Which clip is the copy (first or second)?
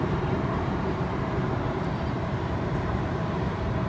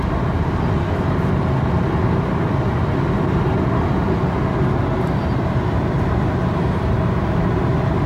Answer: first